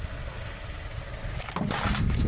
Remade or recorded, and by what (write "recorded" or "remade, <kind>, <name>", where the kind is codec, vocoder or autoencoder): recorded